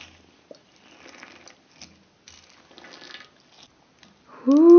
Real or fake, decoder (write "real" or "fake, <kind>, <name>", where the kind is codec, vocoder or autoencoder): real